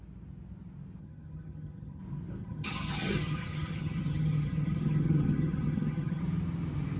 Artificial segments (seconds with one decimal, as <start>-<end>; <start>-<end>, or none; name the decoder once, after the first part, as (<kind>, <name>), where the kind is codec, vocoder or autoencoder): 1.0-2.0 (vocoder, HiFi-GAN); 2.4-6.2